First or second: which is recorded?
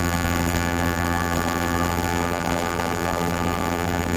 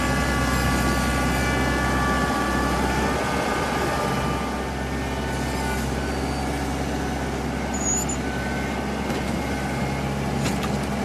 second